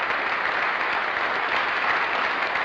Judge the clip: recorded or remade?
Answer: recorded